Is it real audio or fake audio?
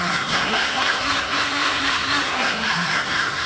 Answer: fake